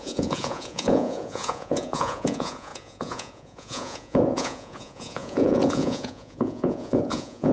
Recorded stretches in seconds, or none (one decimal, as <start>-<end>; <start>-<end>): none